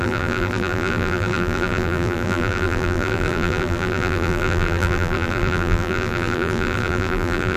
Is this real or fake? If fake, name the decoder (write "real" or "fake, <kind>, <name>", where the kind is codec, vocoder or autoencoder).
fake, vocoder, BigVGAN v2